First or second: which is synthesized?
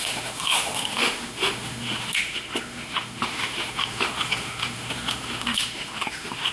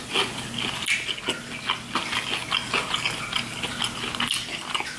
first